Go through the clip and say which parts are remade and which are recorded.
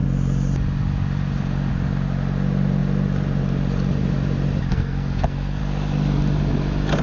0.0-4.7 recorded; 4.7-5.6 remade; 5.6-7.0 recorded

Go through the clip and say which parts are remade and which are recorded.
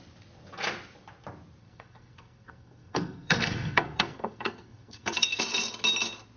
0.0-1.6 recorded; 1.6-5.4 remade; 5.4-6.4 recorded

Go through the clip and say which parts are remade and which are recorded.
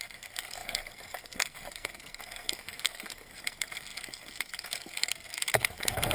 0.0-6.1 remade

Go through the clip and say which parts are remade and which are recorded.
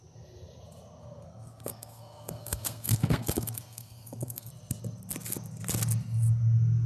0.0-1.0 recorded; 1.0-4.5 remade; 4.5-6.9 recorded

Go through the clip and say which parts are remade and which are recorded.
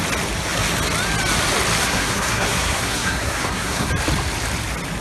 0.0-1.8 recorded; 1.8-3.9 remade; 3.9-5.0 recorded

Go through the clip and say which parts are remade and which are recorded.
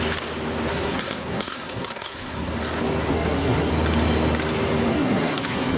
0.0-0.7 recorded; 0.7-2.5 remade; 2.5-3.1 recorded; 3.1-3.7 remade; 3.7-4.9 recorded; 4.9-5.8 remade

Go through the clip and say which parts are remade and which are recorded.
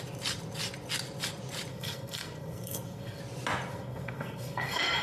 0.0-1.7 recorded; 1.7-3.2 remade; 3.2-3.7 recorded; 3.7-5.0 remade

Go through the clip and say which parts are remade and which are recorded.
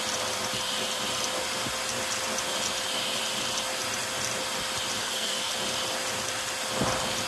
0.0-5.0 recorded; 5.0-5.5 remade; 5.5-7.3 recorded